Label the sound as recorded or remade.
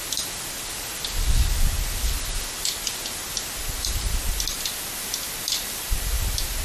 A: recorded